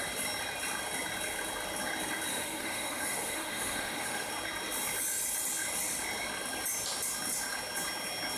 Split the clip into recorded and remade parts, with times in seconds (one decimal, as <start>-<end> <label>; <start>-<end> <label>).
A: 0.0-2.3 recorded; 2.3-4.3 remade; 4.3-8.4 recorded